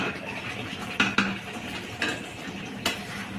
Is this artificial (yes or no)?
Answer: no